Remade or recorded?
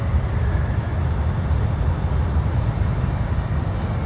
recorded